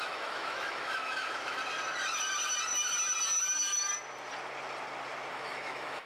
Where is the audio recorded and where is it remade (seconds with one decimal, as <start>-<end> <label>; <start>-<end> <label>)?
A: 0.0-1.6 remade; 1.6-5.3 recorded; 5.3-6.1 remade

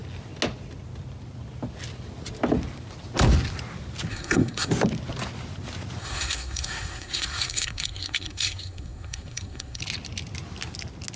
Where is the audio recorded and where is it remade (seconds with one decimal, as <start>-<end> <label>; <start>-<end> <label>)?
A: 0.0-4.1 recorded; 4.1-4.7 remade; 4.7-6.0 recorded; 6.0-9.8 remade; 9.8-11.2 recorded

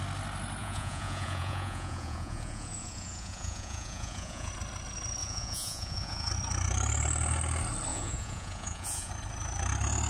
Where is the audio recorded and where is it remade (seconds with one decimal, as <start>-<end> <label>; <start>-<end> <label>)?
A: 0.0-0.6 recorded; 0.6-4.5 remade; 4.5-5.2 recorded; 5.2-6.3 remade; 6.3-7.9 recorded; 7.9-9.1 remade; 9.1-10.1 recorded

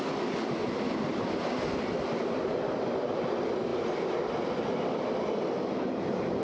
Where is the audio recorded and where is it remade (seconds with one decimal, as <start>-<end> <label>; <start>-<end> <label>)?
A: 0.0-1.1 recorded; 1.1-2.1 remade; 2.1-6.4 recorded

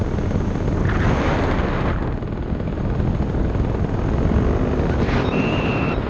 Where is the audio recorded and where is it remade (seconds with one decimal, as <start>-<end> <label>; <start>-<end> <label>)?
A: 0.0-6.1 recorded

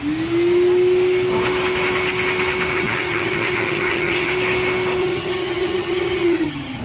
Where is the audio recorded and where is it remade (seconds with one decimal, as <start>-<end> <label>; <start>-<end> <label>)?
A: 0.0-2.7 recorded; 2.7-4.3 remade; 4.3-5.0 recorded; 5.0-6.8 remade

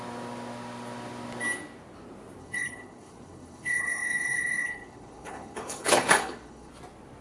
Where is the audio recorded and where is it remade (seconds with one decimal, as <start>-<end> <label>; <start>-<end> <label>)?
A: 0.0-2.4 recorded; 2.4-6.7 remade; 6.7-7.2 recorded